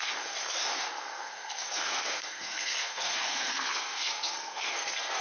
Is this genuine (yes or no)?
no